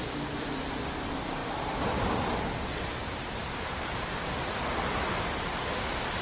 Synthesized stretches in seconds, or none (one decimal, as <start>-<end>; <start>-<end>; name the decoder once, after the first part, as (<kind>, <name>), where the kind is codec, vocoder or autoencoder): none